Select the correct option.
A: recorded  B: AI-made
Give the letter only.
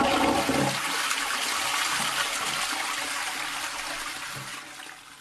A